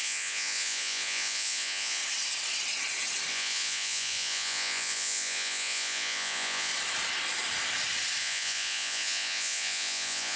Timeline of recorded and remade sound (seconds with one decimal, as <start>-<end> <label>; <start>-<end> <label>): 0.0-2.0 remade; 2.0-3.3 recorded; 3.3-6.7 remade; 6.7-8.2 recorded; 8.2-10.4 remade